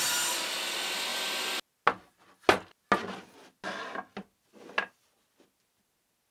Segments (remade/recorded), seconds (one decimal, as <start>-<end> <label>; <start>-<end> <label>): 0.0-6.3 recorded